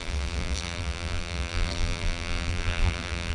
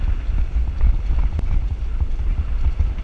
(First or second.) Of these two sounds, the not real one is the first